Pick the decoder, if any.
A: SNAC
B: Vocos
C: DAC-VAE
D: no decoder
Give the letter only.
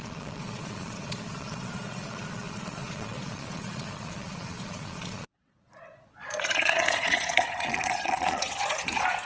B